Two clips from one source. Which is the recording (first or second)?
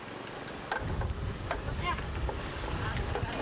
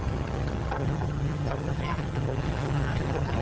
first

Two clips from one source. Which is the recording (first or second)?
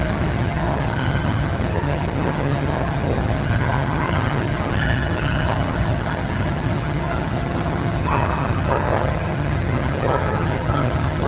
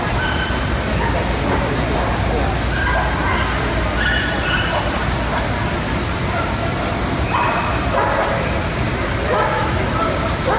second